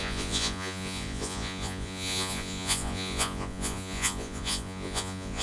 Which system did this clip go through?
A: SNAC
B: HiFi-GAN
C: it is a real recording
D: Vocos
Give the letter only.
D